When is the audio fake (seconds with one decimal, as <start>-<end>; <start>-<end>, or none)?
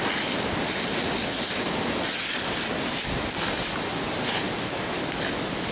none